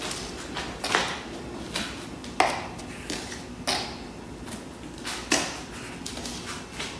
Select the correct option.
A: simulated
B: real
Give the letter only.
B